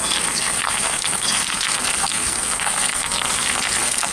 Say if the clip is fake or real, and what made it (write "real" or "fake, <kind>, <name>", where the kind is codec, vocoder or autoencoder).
fake, codec, SNAC